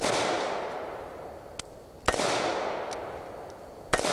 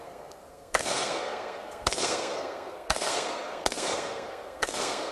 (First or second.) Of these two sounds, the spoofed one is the second